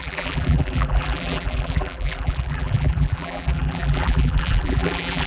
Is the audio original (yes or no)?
no